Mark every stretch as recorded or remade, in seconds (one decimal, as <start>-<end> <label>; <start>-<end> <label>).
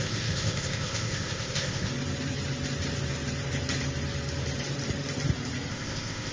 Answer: 0.0-1.9 remade; 1.9-5.7 recorded; 5.7-6.3 remade